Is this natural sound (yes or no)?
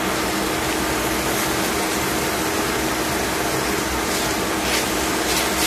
yes